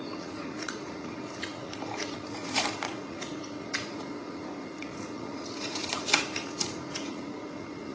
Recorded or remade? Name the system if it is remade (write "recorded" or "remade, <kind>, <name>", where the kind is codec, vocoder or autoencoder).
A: remade, vocoder, Vocos